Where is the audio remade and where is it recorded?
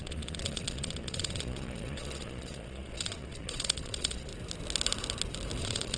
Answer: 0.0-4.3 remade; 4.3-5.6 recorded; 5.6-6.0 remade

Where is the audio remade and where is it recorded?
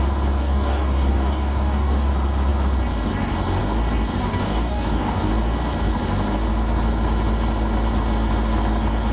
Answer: 0.0-0.4 recorded; 0.4-2.1 remade; 2.1-4.2 recorded; 4.2-5.3 remade; 5.3-9.1 recorded